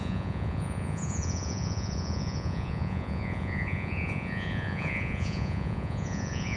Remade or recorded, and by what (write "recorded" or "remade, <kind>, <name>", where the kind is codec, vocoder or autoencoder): remade, vocoder, Vocos